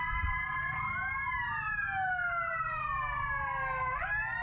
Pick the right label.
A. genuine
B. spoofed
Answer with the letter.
A